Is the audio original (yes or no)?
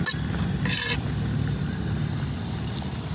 yes